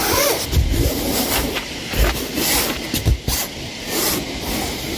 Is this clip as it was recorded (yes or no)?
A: yes